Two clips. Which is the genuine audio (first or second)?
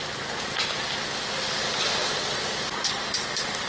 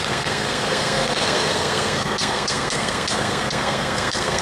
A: first